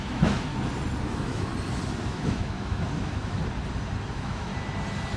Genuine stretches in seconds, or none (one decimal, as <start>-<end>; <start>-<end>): 0.5-1.0; 1.5-2.1; 3.4-4.1; 4.5-5.2